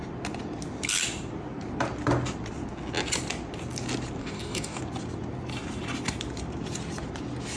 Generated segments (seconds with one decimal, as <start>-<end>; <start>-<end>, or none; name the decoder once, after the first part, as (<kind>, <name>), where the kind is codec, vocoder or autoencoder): 4.2-4.8 (codec, DAC)

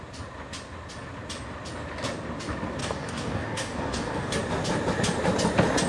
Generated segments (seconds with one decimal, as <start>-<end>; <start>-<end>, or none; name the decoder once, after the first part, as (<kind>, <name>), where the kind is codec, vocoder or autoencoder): 2.8-4.4 (codec, DAC)

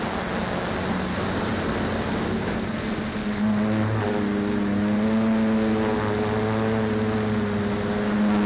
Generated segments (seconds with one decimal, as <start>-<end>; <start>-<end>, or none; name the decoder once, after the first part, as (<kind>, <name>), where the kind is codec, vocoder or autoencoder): none

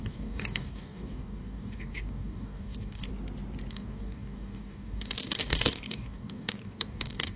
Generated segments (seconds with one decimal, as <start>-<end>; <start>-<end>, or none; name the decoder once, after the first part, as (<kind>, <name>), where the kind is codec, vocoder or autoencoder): 0.0-3.1 (codec, DAC); 3.7-7.4

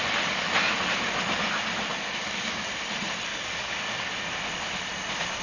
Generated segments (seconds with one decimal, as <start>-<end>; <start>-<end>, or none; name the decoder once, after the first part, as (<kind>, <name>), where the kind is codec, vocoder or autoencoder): 2.2-2.7 (codec, DAC); 3.3-4.1

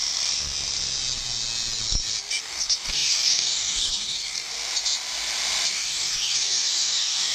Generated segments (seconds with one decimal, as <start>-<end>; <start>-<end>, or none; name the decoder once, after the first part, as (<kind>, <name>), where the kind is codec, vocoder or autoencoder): 2.4-4.5 (codec, DAC); 5.7-7.3